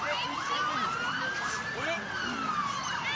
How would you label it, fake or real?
real